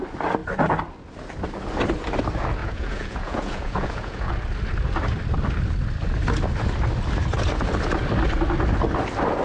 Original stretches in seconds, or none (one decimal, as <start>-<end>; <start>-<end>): 0.0-2.6; 4.3-9.4